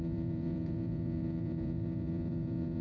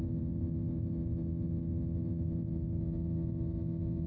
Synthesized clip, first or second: first